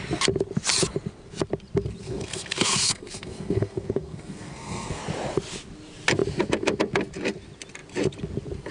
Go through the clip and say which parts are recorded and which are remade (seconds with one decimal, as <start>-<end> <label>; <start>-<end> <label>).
0.0-2.0 recorded; 2.0-5.0 remade; 5.0-8.7 recorded